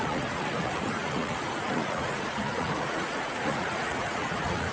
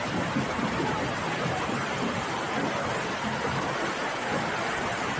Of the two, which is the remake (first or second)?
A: first